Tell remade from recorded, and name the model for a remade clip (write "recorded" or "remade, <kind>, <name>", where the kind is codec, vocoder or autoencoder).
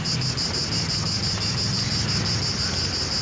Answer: recorded